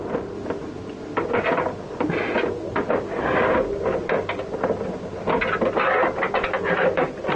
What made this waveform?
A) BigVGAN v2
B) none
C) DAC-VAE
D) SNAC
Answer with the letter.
B